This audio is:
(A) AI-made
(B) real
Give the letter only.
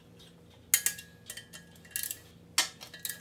B